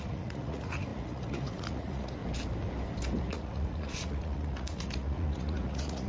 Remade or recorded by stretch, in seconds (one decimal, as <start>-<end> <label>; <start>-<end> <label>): 0.0-2.2 remade; 2.2-3.2 recorded; 3.2-6.1 remade